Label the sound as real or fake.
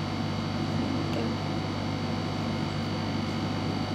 real